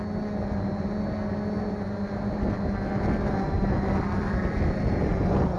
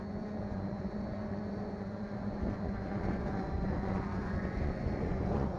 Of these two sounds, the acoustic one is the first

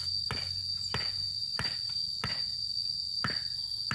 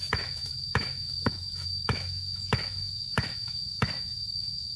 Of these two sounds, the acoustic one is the first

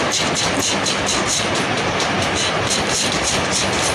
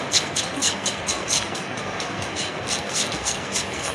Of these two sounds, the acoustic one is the first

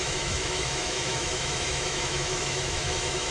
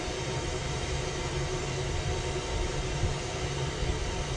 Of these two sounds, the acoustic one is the second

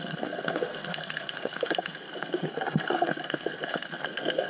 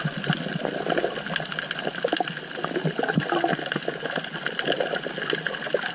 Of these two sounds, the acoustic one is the second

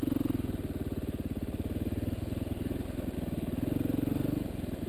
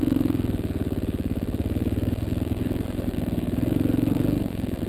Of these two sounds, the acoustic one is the first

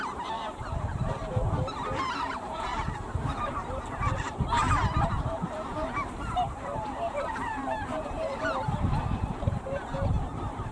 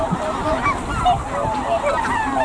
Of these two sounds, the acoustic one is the second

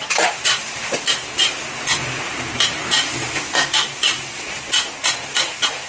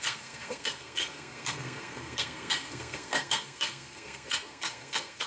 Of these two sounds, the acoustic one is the first